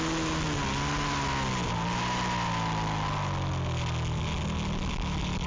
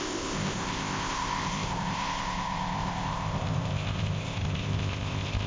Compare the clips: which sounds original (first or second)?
first